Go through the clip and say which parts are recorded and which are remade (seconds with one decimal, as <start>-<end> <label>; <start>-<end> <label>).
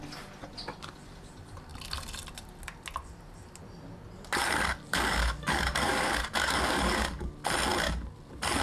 0.0-4.9 recorded; 4.9-7.3 remade; 7.3-8.6 recorded